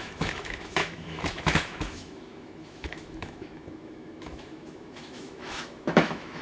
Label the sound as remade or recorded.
remade